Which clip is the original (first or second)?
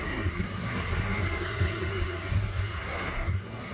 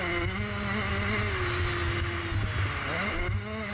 second